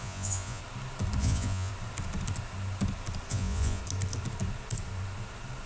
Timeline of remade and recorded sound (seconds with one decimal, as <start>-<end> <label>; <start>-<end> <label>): 0.0-0.6 remade; 0.6-1.2 recorded; 1.2-1.7 remade; 1.7-3.3 recorded; 3.3-3.8 remade; 3.8-5.7 recorded